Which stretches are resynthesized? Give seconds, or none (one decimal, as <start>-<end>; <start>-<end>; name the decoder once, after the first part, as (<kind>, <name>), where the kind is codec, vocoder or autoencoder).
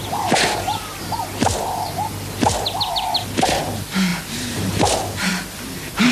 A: none